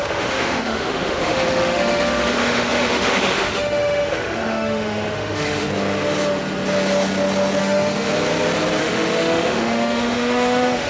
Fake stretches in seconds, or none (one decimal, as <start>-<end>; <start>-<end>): 0.0-5.7; 7.6-8.1; 8.8-10.9